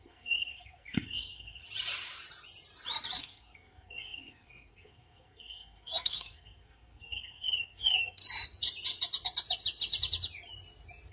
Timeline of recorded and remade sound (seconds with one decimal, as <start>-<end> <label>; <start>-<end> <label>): 0.0-1.6 remade; 1.6-3.2 recorded; 3.2-8.2 remade; 8.2-11.1 recorded